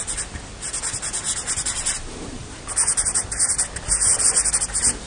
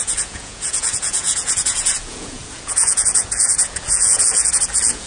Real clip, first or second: first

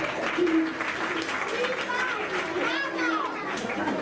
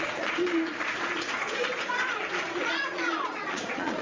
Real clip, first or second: first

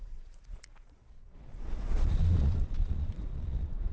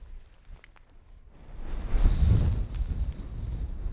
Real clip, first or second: second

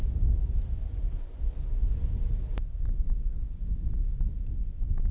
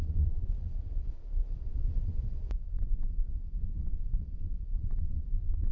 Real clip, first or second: first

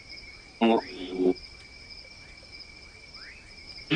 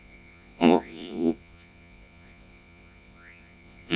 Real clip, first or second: first